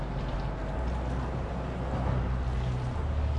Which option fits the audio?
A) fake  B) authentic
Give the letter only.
B